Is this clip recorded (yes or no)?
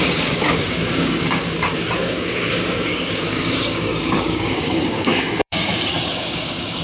no